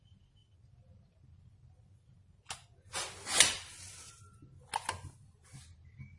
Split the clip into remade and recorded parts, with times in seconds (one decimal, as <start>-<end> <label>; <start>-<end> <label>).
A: 0.0-6.2 recorded